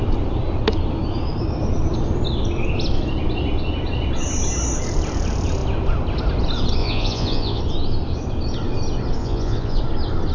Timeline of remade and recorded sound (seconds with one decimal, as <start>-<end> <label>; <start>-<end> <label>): 0.0-6.8 recorded; 6.8-7.6 remade; 7.6-9.2 recorded; 9.2-9.8 remade; 9.8-10.3 recorded